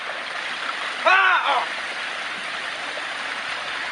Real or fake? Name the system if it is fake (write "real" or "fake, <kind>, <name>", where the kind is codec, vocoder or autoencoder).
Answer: fake, vocoder, BigVGAN v2